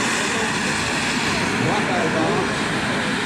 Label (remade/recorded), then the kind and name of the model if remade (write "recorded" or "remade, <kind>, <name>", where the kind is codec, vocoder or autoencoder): recorded